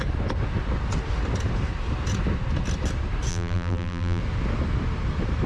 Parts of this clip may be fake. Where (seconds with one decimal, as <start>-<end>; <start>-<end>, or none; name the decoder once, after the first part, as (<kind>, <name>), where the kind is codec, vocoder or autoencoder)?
3.3-4.2 (vocoder, BigVGAN v2)